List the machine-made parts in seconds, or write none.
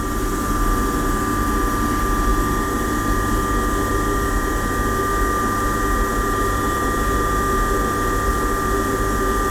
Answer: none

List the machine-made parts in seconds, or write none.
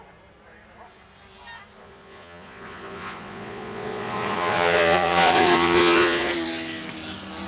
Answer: 1.8-6.3 (vocoder, Vocos)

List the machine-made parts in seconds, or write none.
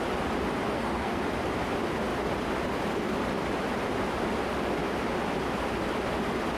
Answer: 0.7-1.2 (codec, SNAC)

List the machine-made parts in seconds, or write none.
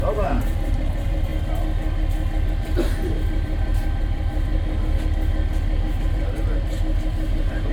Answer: 0.0-1.3 (vocoder, BigVGAN v2); 2.5-4.5; 5.9-7.7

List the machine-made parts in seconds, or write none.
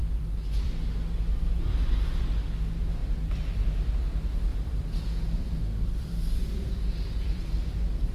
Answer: 0.0-0.7 (vocoder, BigVGAN v2); 3.0-3.9; 4.5-8.1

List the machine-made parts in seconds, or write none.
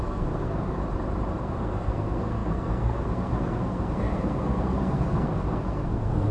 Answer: 0.0-0.8 (codec, SNAC); 1.4-6.3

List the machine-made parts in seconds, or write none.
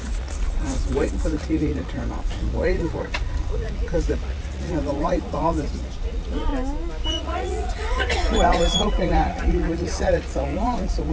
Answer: 0.0-6.5 (vocoder, Vocos); 7.1-11.1